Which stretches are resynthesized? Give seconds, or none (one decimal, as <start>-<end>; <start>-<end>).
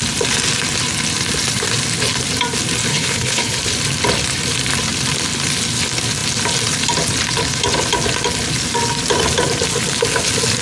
2.9-3.6